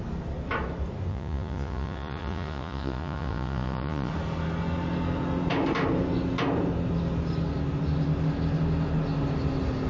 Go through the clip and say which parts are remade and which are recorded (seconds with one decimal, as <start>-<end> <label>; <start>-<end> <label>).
0.0-1.1 recorded; 1.1-4.1 remade; 4.1-9.9 recorded